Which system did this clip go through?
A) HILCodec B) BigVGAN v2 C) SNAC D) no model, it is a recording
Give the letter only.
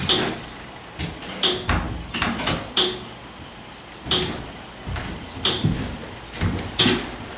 D